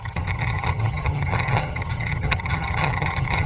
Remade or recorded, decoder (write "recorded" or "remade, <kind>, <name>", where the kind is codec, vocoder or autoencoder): remade, vocoder, HiFi-GAN